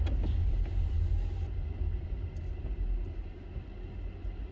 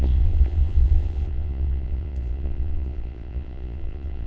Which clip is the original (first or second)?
first